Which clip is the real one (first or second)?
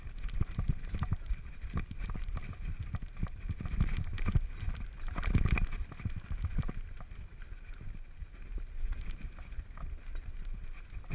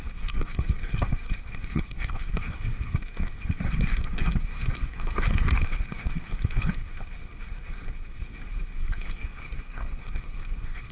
first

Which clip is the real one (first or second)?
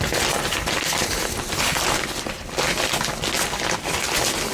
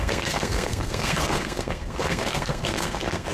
first